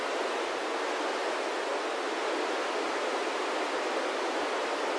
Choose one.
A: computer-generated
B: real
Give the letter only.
B